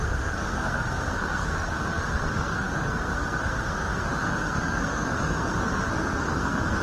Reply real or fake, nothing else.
fake